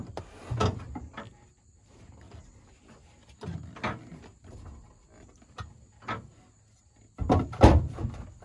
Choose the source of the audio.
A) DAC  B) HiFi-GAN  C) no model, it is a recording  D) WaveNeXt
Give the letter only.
C